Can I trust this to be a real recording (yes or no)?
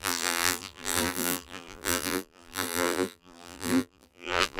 no